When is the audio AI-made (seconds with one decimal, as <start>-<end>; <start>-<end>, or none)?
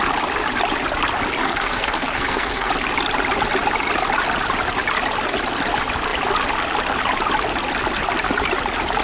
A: 1.4-2.7